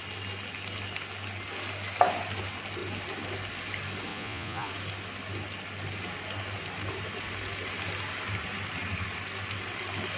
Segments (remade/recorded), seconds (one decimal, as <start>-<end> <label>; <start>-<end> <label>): 0.0-4.1 recorded; 4.1-4.7 remade; 4.7-10.2 recorded